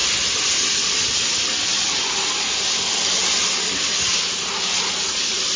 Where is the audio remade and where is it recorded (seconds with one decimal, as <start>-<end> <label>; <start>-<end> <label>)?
0.0-5.6 recorded